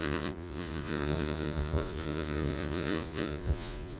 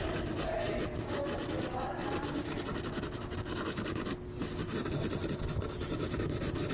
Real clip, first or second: second